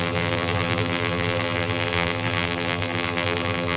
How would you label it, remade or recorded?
remade